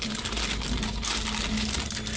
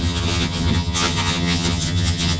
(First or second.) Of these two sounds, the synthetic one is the second